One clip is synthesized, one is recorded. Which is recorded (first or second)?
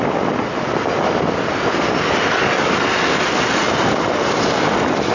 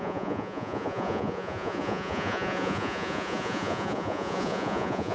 first